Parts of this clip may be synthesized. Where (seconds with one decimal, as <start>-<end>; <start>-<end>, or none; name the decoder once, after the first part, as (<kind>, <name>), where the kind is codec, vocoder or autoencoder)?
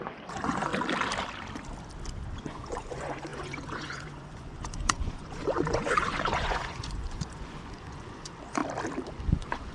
0.0-0.7 (vocoder, Vocos); 2.4-8.6; 9.1-9.7